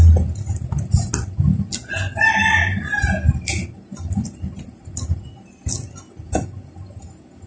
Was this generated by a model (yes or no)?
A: no